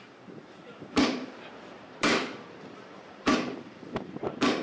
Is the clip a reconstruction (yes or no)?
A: yes